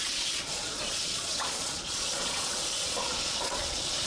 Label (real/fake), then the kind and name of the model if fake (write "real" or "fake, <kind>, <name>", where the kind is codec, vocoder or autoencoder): fake, vocoder, Vocos